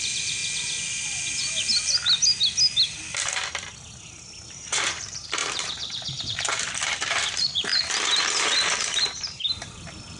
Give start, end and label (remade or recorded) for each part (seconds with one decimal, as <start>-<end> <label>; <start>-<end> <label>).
0.0-0.4 remade; 0.4-4.5 recorded; 4.5-10.2 remade